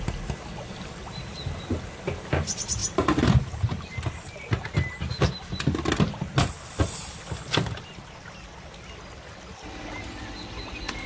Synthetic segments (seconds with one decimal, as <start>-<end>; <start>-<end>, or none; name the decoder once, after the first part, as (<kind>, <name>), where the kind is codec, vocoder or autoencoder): none